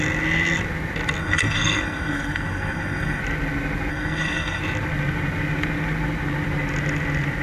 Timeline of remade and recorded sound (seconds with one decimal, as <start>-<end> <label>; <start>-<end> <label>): 0.0-1.2 recorded; 1.2-3.2 remade; 3.2-3.9 recorded; 3.9-4.6 remade; 4.6-7.4 recorded